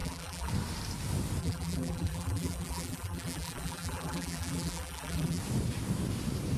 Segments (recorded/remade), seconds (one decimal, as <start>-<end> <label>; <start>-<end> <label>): 0.0-0.5 remade; 0.5-1.4 recorded; 1.4-5.4 remade; 5.4-6.6 recorded